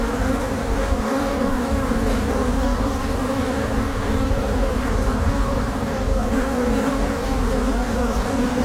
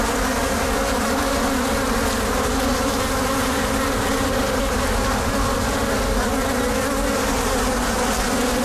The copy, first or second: first